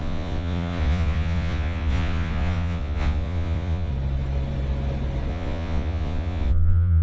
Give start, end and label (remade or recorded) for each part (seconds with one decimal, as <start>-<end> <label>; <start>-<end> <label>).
0.0-3.9 remade; 3.9-5.3 recorded; 5.3-7.0 remade

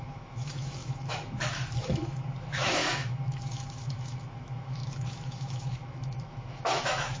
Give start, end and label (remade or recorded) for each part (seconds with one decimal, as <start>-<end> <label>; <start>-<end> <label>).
0.0-7.2 remade

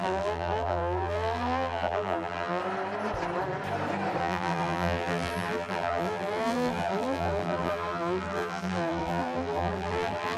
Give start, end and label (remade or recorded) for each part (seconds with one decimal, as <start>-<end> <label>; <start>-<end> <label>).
0.0-2.6 remade; 2.6-4.2 recorded; 4.2-10.4 remade

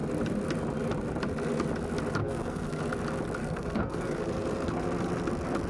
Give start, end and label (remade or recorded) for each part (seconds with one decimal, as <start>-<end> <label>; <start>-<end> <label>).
0.0-2.2 recorded; 2.2-2.8 remade; 2.8-3.4 recorded; 3.4-4.2 remade; 4.2-5.7 recorded

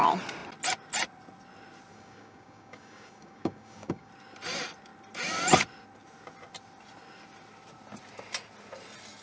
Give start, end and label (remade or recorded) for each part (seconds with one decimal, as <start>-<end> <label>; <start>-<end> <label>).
0.0-1.9 recorded; 1.9-4.1 remade; 4.1-9.2 recorded